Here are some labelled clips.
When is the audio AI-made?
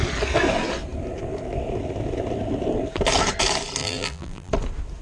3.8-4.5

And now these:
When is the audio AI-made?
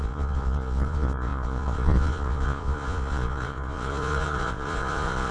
0.0-5.3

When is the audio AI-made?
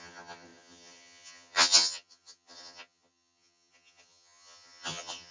0.0-5.3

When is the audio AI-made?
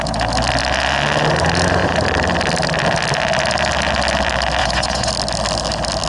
4.6-5.1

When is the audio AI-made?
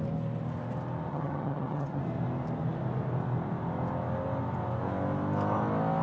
1.1-2.0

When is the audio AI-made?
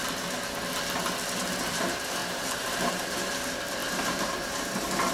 2.2-2.9; 3.8-5.1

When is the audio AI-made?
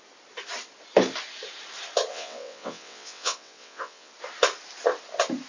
2.1-4.1